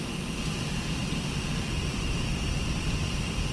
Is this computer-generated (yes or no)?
no